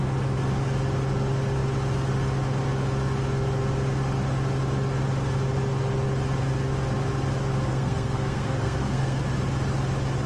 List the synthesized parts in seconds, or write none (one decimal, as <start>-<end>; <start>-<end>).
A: 7.7-9.2